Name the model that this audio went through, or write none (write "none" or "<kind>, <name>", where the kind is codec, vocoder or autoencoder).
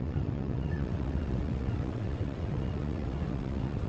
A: vocoder, WaveNeXt